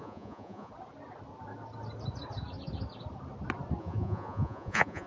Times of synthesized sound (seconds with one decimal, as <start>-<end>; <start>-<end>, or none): 0.0-0.7; 3.8-5.1